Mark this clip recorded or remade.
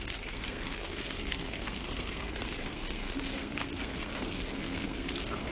remade